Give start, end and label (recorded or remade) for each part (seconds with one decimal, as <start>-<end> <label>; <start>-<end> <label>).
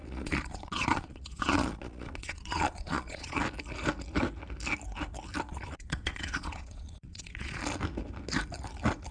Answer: 0.0-3.4 remade; 3.4-5.5 recorded; 5.5-7.6 remade; 7.6-9.1 recorded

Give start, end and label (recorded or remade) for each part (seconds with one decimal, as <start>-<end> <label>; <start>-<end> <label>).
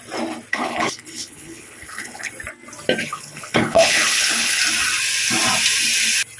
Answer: 0.0-0.5 recorded; 0.5-2.3 remade; 2.3-3.0 recorded; 3.0-4.6 remade; 4.6-6.4 recorded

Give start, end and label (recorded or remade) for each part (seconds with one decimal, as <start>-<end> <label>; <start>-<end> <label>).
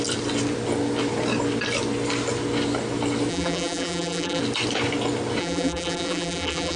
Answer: 0.0-3.3 recorded; 3.3-4.4 remade; 4.4-5.4 recorded; 5.4-6.8 remade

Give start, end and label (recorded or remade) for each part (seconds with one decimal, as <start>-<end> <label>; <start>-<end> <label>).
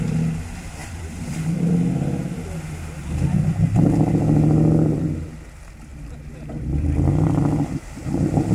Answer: 0.0-0.8 recorded; 0.8-1.7 remade; 1.7-5.9 recorded; 5.9-7.1 remade; 7.1-8.5 recorded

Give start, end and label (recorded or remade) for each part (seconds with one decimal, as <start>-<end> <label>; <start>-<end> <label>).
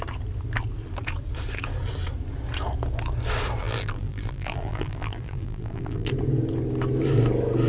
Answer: 0.0-3.6 recorded; 3.6-6.1 remade; 6.1-7.7 recorded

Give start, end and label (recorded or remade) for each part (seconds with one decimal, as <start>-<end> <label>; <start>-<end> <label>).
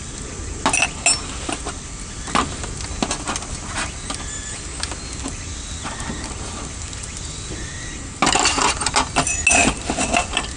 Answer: 0.0-10.6 recorded